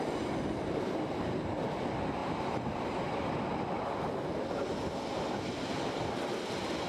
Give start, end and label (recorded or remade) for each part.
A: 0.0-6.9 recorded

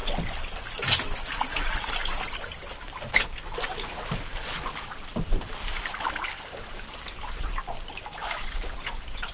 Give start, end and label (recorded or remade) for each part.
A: 0.0-0.6 recorded; 0.6-2.0 remade; 2.0-3.9 recorded; 3.9-9.3 remade

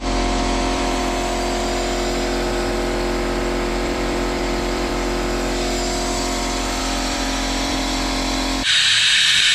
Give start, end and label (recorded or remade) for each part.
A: 0.0-1.0 remade; 1.0-3.7 recorded; 3.7-4.9 remade; 4.9-6.8 recorded; 6.8-9.5 remade

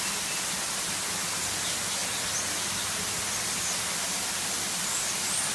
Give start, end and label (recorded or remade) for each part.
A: 0.0-5.5 recorded